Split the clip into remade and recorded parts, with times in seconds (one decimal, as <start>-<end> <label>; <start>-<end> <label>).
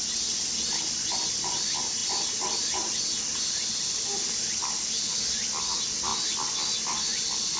0.0-7.6 recorded